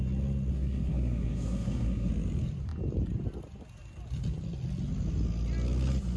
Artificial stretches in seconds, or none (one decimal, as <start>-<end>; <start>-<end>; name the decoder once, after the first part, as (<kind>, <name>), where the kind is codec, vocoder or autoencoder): 0.5-2.1 (codec, SNAC)